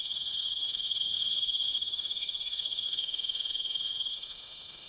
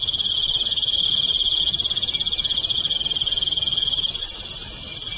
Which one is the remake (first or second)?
first